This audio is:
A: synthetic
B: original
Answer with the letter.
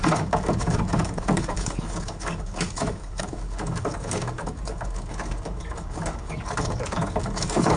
A